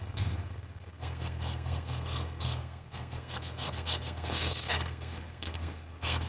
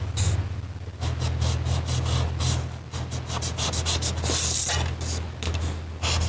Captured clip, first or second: second